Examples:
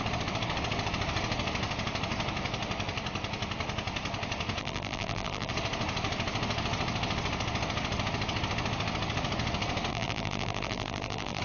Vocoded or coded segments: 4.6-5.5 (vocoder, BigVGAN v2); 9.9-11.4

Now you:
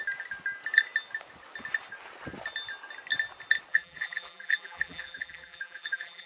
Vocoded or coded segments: 3.7-6.3 (vocoder, BigVGAN v2)

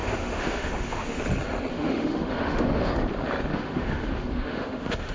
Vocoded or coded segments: 0.0-1.2 (autoencoder, DAC-VAE); 1.7-2.9; 3.5-5.1

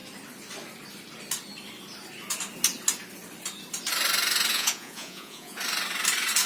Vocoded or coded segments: 4.5-5.6 (vocoder, Vocos)

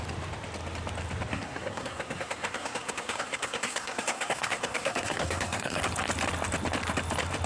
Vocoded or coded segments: 1.3-5.8 (codec, SNAC)

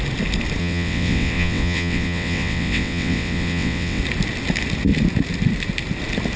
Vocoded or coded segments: 0.6-4.0 (vocoder, WaveNeXt)

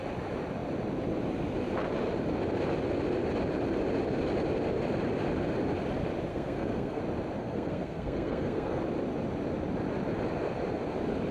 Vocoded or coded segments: 6.3-7.0 (codec, SNAC); 7.4-8.8